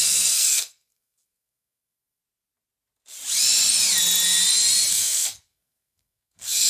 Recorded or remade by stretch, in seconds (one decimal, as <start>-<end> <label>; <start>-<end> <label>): 0.0-2.2 remade; 2.2-4.9 recorded; 4.9-6.7 remade